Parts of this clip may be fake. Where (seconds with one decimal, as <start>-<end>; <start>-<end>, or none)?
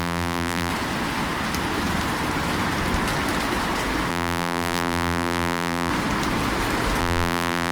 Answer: 0.0-0.7; 4.1-5.9; 7.0-7.7